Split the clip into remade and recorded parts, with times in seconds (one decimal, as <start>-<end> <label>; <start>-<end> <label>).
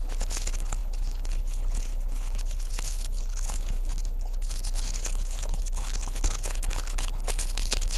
0.0-8.0 remade